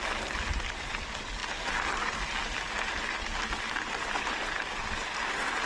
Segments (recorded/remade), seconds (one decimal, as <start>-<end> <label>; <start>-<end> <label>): 0.0-5.7 recorded